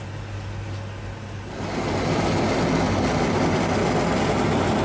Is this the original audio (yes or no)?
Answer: yes